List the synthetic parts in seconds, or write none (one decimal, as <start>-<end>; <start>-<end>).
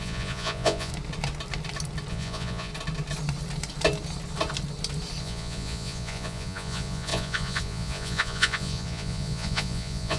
0.0-0.9; 2.1-2.7; 5.2-10.2